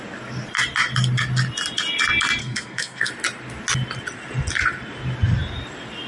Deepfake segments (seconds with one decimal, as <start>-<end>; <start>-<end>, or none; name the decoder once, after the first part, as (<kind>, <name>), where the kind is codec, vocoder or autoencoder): 2.4-3.1 (codec, SNAC)